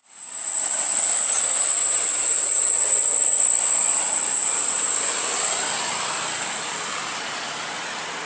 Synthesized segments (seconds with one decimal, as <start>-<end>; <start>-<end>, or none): 0.0-5.0